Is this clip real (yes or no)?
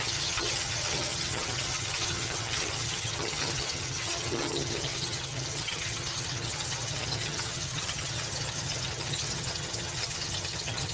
no